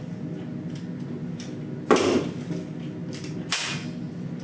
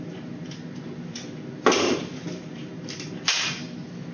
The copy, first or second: second